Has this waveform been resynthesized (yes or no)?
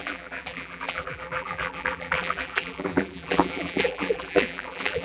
yes